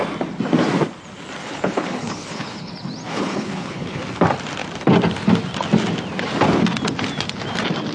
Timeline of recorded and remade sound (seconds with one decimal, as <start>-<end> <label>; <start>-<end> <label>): 0.0-1.4 recorded; 1.4-2.7 remade; 2.7-3.1 recorded; 3.1-4.0 remade; 4.0-7.9 recorded